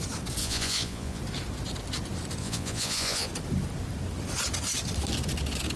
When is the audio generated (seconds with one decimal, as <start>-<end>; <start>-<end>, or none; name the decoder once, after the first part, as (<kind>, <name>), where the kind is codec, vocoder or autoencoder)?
0.4-1.2 (vocoder, Vocos); 2.4-3.3